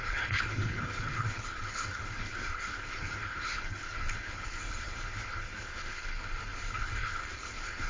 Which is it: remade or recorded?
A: remade